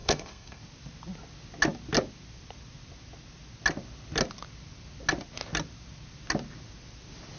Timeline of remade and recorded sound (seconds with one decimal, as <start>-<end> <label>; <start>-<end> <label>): 0.0-0.6 remade; 0.6-7.4 recorded